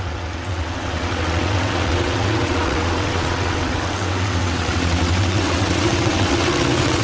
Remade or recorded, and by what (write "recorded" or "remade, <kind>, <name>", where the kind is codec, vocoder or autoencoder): remade, vocoder, WaveNeXt